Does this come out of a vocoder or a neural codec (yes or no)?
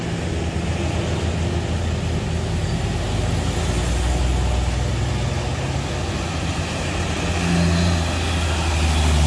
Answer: no